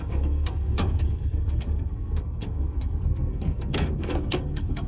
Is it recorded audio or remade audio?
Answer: remade